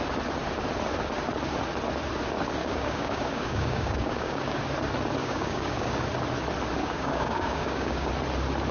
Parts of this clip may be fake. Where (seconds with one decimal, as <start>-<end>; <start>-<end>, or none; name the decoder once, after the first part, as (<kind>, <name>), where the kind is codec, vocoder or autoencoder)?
2.6-4.6 (codec, DAC); 5.2-6.0; 6.8-8.1